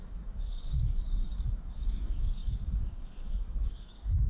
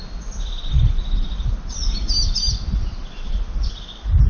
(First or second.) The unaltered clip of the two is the second